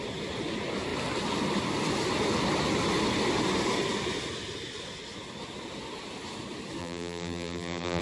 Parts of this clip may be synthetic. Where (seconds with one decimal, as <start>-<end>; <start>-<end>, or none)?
6.8-8.0